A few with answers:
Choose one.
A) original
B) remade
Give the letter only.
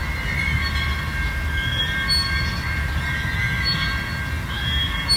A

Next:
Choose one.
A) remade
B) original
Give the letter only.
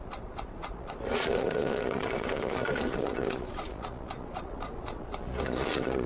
A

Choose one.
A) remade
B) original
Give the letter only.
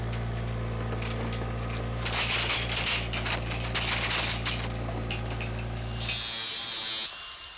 B